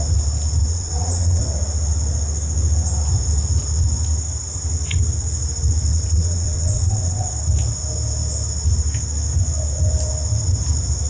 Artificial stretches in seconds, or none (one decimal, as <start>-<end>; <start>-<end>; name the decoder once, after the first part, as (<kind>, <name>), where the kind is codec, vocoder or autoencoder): 0.7-1.4 (vocoder, WaveNeXt); 5.9-7.3